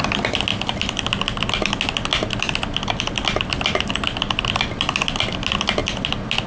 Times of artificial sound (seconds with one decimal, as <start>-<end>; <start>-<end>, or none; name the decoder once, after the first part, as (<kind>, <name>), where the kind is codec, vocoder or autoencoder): none